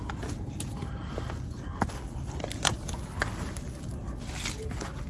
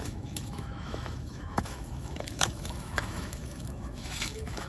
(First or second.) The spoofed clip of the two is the second